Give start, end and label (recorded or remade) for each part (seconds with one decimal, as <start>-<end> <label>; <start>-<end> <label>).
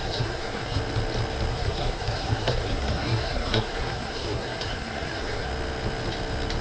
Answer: 0.0-0.8 remade; 0.8-1.5 recorded; 1.5-5.5 remade; 5.5-6.6 recorded